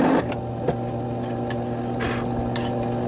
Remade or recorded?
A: recorded